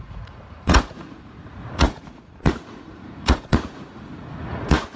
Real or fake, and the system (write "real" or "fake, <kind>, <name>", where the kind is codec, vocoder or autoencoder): fake, vocoder, Vocos